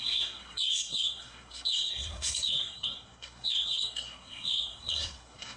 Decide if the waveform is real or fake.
fake